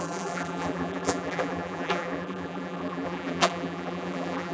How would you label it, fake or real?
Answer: fake